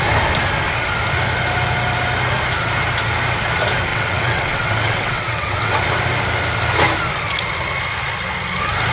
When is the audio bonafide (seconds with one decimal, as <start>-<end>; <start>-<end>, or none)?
0.0-3.9; 5.8-8.9